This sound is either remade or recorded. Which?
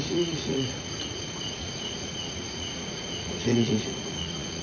remade